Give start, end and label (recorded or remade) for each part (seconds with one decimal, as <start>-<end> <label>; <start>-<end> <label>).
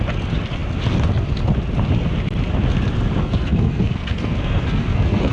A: 0.0-3.2 recorded; 3.2-5.3 remade